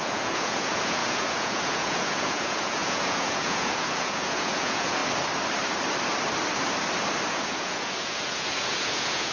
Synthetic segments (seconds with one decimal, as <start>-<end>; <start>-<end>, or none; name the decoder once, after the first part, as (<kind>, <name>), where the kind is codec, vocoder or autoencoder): 0.0-5.0 (vocoder, Vocos); 7.3-9.3